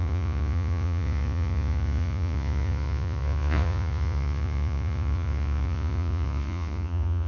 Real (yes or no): no